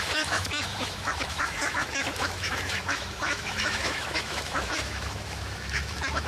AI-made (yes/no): yes